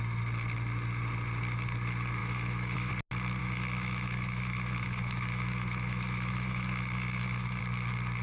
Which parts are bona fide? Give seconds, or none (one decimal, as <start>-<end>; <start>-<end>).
0.0-2.2; 2.9-3.4; 7.6-8.2

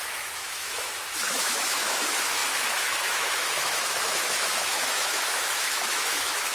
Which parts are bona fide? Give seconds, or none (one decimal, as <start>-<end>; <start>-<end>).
none

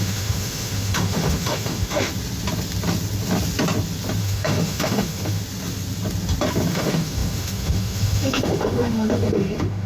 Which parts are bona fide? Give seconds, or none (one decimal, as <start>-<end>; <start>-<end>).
2.1-4.2; 5.4-6.7

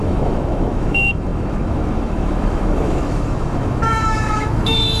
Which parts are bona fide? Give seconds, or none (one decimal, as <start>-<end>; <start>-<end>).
none

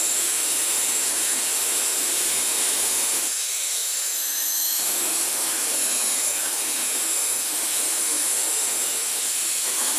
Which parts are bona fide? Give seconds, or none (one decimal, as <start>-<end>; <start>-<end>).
none

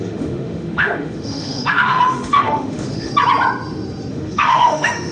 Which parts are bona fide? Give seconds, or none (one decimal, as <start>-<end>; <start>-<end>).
3.1-4.1

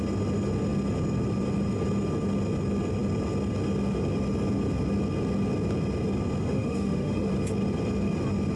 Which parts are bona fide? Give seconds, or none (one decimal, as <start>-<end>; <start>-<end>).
0.0-6.4; 7.3-8.6

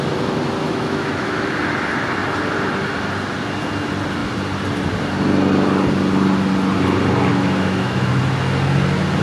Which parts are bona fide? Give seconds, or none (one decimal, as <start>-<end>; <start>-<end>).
0.0-0.7; 1.5-7.3; 8.1-9.2